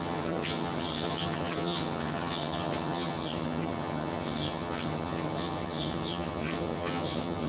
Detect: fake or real fake